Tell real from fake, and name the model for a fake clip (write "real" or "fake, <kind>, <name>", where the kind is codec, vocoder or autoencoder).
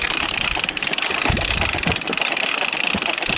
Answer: real